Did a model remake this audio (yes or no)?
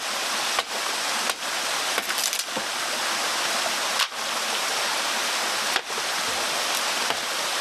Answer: no